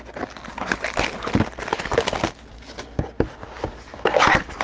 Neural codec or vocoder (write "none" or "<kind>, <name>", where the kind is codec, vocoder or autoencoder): none